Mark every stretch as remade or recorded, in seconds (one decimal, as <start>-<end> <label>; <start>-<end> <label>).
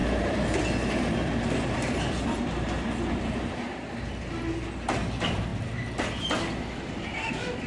0.0-3.9 remade; 3.9-7.7 recorded